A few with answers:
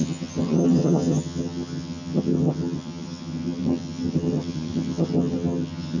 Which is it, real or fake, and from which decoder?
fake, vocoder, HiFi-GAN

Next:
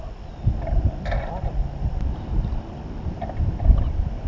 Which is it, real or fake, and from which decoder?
real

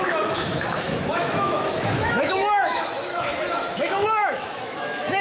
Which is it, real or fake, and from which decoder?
fake, autoencoder, DAC-VAE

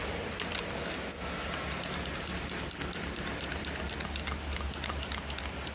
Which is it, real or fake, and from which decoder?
real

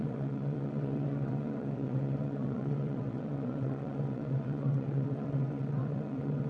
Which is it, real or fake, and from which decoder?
fake, vocoder, WaveNeXt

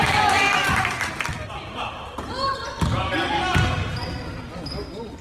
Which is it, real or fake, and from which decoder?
real